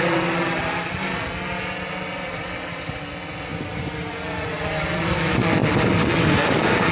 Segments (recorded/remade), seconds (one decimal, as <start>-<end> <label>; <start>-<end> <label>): 0.0-6.9 recorded